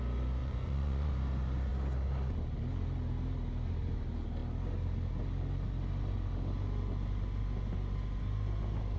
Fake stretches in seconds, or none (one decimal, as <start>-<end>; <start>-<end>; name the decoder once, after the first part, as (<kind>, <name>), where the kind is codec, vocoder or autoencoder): 0.4-1.1 (vocoder, Vocos)